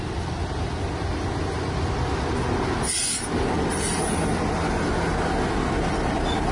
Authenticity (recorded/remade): recorded